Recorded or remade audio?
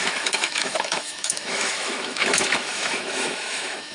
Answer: remade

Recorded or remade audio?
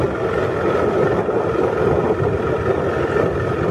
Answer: recorded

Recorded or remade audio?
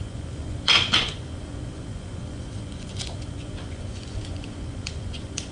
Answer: remade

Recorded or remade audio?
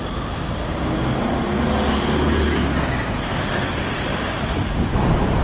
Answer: recorded